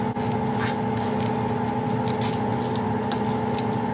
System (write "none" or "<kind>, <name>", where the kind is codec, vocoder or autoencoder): none